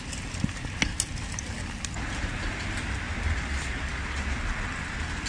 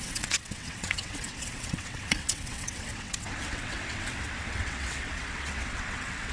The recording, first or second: first